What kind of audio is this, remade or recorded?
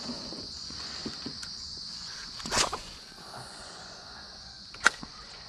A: remade